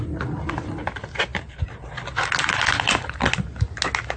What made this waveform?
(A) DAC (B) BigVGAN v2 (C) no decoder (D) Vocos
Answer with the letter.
C